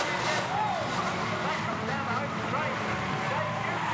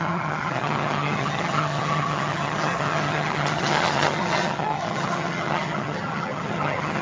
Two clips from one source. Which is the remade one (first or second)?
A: second